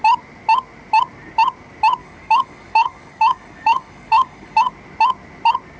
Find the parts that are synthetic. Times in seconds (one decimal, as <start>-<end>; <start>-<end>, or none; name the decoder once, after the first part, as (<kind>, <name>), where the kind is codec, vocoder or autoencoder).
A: 2.0-4.7 (codec, DAC)